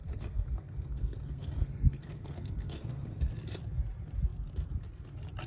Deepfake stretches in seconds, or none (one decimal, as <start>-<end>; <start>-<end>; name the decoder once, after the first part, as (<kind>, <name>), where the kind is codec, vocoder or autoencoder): 0.0-3.3 (codec, SNAC)